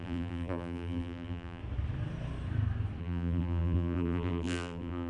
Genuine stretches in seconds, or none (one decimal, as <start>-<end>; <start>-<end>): 1.6-3.0